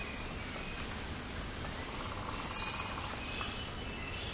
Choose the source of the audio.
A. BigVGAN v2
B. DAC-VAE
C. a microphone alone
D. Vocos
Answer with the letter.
C